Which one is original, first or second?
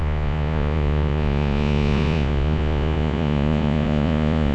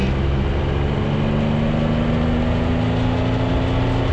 second